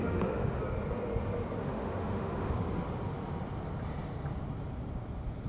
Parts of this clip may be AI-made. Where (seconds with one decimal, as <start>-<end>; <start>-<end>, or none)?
0.0-0.6; 1.6-2.5